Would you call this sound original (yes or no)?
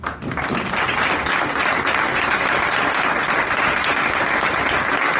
yes